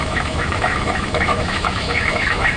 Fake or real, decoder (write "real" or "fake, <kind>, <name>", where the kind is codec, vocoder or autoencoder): fake, autoencoder, DAC-VAE